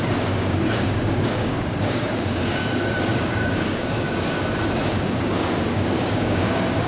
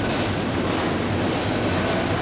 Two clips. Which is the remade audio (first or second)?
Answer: first